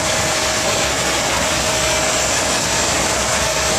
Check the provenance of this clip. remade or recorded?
remade